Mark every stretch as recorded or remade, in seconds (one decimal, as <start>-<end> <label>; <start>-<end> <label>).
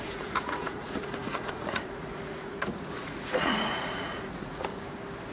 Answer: 0.0-4.7 remade; 4.7-5.3 recorded